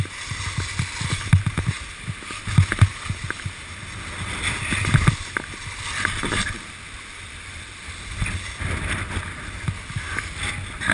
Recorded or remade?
recorded